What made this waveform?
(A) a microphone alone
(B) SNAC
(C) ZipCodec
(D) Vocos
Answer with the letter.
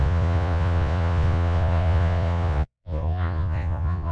D